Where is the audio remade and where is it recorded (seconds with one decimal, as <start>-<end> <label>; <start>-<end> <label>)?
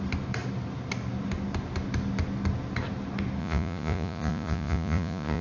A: 0.0-3.4 recorded; 3.4-5.4 remade